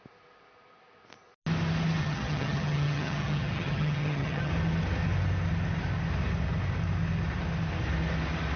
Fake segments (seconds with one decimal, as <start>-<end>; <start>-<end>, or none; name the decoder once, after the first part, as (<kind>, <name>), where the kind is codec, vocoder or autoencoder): 2.0-4.5 (vocoder, HiFi-GAN)